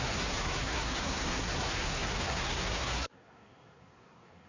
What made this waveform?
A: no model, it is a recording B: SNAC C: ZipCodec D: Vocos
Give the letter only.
B